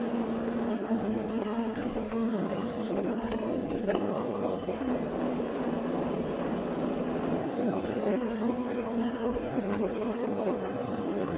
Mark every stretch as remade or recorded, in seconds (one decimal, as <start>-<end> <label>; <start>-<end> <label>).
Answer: 0.0-0.7 recorded; 0.7-4.9 remade; 4.9-7.4 recorded; 7.4-11.4 remade